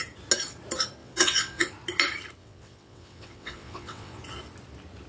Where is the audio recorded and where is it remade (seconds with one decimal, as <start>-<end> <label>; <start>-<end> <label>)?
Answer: 0.0-1.0 recorded; 1.0-1.7 remade; 1.7-2.4 recorded; 2.4-4.2 remade; 4.2-5.1 recorded